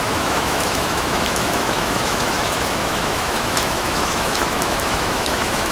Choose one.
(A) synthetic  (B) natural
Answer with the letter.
A